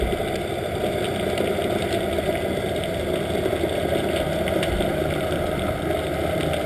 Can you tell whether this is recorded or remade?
recorded